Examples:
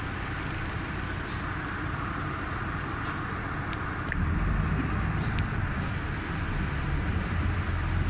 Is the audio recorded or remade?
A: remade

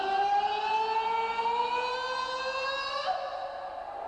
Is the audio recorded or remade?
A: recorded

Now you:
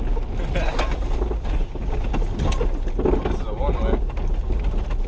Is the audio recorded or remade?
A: recorded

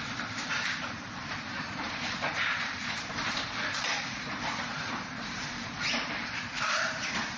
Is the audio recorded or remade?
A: remade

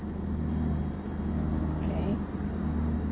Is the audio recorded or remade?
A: recorded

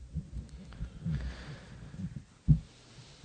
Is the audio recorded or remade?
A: recorded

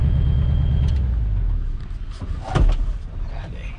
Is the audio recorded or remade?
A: recorded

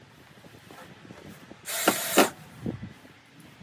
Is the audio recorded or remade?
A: recorded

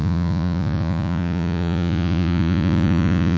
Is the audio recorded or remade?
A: remade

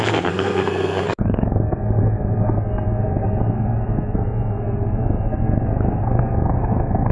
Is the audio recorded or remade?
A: remade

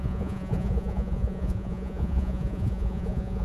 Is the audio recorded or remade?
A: remade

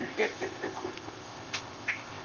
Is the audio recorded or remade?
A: remade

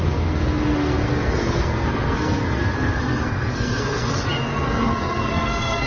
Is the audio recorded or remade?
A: remade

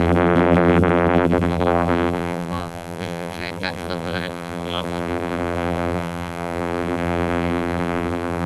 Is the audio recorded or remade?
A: remade